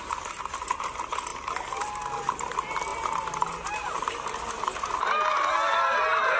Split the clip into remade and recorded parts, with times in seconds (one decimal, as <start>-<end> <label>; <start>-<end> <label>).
0.0-2.9 recorded; 2.9-5.8 remade; 5.8-6.4 recorded